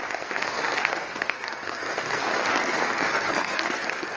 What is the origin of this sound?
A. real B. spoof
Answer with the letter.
B